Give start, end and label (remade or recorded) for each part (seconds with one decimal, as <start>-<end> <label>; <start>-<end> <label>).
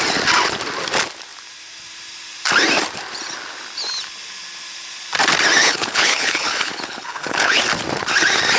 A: 0.0-5.6 recorded; 5.6-7.6 remade; 7.6-8.6 recorded